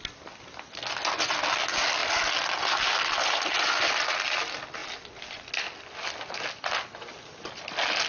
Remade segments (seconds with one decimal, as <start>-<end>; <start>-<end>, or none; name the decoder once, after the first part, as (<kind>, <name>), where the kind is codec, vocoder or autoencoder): none